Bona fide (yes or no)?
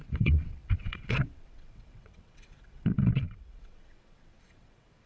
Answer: no